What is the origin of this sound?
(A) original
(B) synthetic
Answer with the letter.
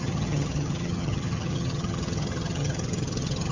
B